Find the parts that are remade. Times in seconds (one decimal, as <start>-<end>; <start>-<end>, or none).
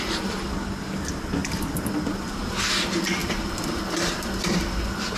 3.2-5.2